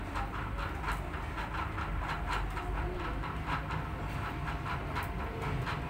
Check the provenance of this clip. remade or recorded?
recorded